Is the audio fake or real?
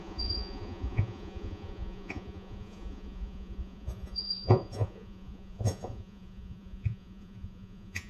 fake